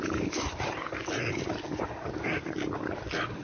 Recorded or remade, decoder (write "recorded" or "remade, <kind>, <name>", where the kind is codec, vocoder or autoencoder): recorded